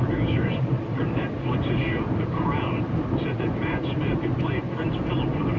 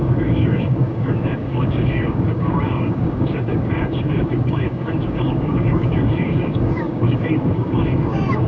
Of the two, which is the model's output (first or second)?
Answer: second